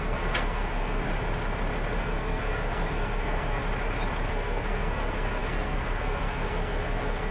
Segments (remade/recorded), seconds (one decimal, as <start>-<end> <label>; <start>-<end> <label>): 0.0-1.1 remade; 1.1-2.0 recorded; 2.0-3.6 remade; 3.6-4.3 recorded; 4.3-7.3 remade

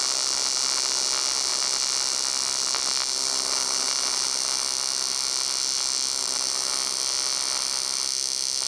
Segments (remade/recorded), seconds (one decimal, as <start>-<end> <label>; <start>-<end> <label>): 0.0-8.7 recorded

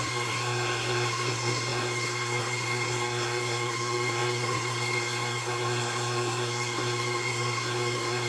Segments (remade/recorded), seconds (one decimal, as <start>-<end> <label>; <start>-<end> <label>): 0.0-8.3 remade

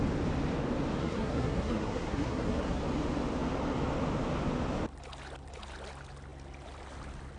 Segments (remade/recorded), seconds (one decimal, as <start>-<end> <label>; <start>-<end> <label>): 0.0-1.0 recorded; 1.0-2.8 remade; 2.8-7.4 recorded

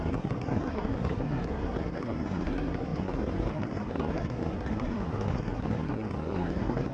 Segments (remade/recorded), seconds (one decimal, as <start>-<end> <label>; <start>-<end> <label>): 0.0-6.9 remade

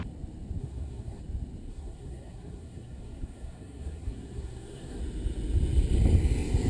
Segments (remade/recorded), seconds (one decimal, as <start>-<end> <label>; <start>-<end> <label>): 0.0-0.6 recorded; 0.6-1.2 remade; 1.2-1.7 recorded; 1.7-5.0 remade; 5.0-6.7 recorded

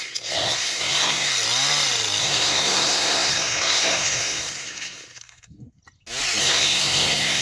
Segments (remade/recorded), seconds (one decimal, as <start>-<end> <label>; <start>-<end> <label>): 0.0-1.3 remade; 1.3-2.2 recorded; 2.2-5.8 remade; 5.8-6.4 recorded; 6.4-7.4 remade

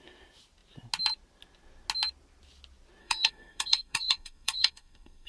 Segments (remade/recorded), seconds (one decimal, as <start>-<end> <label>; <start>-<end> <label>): 0.0-3.0 recorded; 3.0-5.3 remade